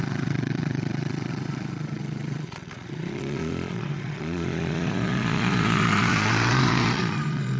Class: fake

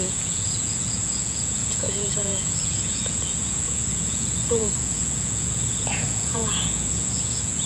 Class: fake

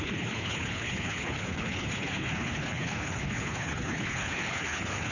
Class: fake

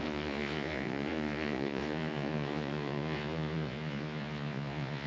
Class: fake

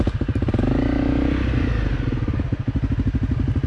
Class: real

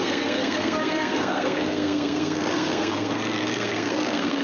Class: fake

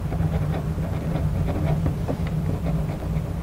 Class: real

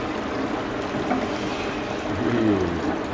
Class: real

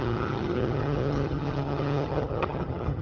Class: fake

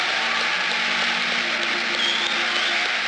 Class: real